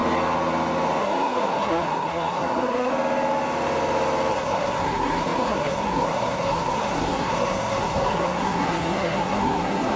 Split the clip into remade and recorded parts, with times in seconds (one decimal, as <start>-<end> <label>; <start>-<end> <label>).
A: 0.0-1.0 recorded; 1.0-2.9 remade; 2.9-4.3 recorded; 4.3-10.0 remade